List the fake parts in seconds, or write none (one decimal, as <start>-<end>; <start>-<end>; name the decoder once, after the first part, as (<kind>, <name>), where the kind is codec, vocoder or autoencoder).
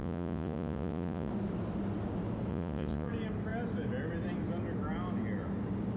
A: 0.0-1.3 (vocoder, Vocos); 2.5-3.1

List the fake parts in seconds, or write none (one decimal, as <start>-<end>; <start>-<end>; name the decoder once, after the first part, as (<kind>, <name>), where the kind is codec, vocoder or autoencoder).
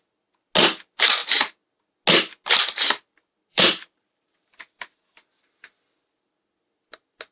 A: 3.5-4.5 (vocoder, BigVGAN v2)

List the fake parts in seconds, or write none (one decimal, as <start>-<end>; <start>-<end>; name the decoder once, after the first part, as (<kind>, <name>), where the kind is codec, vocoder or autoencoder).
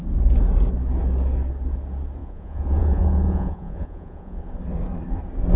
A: 2.2-4.4 (vocoder, Vocos)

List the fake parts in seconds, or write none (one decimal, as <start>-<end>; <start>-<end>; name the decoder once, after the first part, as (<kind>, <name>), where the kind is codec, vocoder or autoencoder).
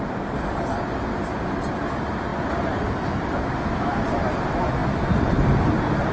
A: none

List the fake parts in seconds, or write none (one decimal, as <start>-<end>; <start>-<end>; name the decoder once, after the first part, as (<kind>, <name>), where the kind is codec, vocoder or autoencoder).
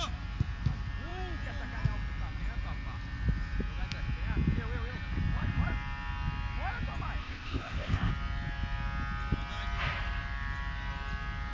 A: 7.2-8.1 (codec, ZipCodec)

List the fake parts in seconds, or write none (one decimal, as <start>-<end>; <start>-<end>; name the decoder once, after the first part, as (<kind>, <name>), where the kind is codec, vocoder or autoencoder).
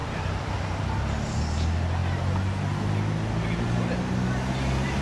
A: 0.0-0.8 (vocoder, BigVGAN v2)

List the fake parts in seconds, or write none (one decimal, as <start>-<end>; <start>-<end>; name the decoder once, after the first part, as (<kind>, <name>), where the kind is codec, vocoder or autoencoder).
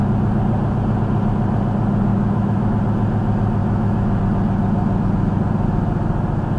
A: 2.1-2.7 (autoencoder, DAC-VAE); 3.6-4.2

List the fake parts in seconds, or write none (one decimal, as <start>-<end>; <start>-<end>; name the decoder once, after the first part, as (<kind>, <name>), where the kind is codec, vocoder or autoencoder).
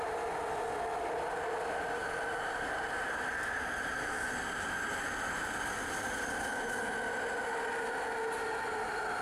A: 2.0-2.9 (vocoder, BigVGAN v2)